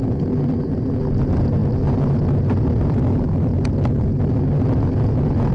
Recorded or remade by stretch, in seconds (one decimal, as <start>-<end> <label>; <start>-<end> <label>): 0.0-5.5 recorded